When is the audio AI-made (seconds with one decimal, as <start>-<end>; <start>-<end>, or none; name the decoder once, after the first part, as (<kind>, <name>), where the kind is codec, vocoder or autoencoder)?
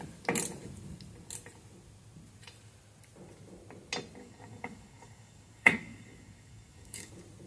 4.2-7.1 (codec, DAC)